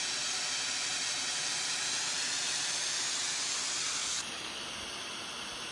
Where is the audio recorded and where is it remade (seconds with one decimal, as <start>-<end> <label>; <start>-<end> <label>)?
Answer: 0.0-4.0 recorded; 4.0-4.5 remade; 4.5-5.7 recorded